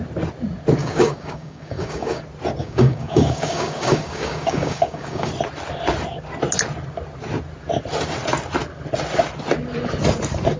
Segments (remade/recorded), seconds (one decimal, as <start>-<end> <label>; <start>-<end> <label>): 0.0-0.8 recorded; 0.8-2.2 remade; 2.2-2.6 recorded; 2.6-5.3 remade; 5.3-10.6 recorded